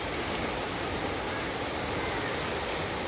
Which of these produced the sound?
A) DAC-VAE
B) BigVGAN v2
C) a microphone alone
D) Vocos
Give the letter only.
C